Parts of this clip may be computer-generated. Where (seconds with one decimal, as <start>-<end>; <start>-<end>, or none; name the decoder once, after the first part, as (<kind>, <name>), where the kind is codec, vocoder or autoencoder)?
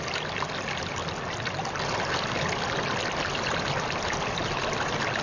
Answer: none